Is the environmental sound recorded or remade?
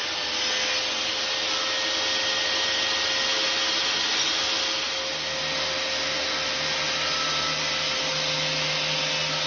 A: recorded